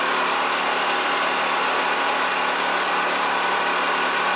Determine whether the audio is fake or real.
real